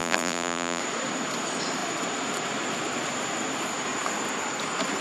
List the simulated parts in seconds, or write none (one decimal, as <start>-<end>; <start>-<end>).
0.0-0.8

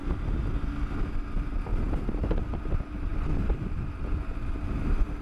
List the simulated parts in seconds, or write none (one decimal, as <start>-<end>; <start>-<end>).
none